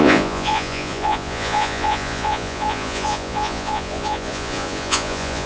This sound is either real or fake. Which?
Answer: fake